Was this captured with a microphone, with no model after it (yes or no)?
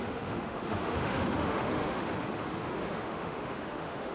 no